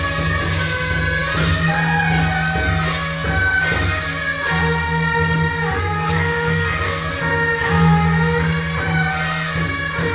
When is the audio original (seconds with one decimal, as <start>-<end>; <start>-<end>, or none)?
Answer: 0.0-5.8; 7.1-10.1